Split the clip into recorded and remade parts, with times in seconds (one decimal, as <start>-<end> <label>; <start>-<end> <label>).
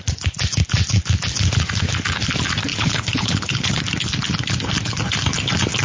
0.0-2.7 recorded; 2.7-3.8 remade; 3.8-5.8 recorded